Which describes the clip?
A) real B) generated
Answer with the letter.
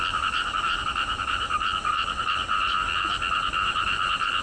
B